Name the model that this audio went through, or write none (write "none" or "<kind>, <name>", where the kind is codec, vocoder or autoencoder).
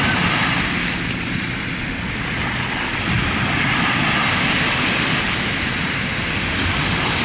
none